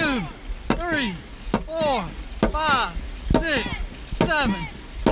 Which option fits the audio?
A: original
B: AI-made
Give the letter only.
A